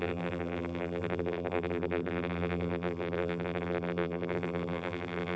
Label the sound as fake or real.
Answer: fake